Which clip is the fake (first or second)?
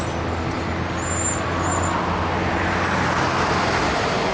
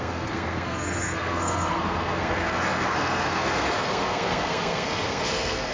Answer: second